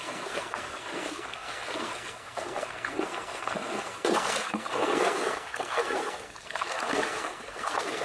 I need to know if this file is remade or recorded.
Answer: remade